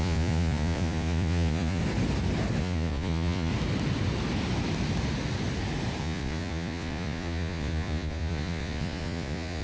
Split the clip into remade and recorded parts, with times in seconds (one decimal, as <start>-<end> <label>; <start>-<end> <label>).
0.0-1.8 remade; 1.8-2.6 recorded; 2.6-3.5 remade; 3.5-6.0 recorded; 6.0-9.6 remade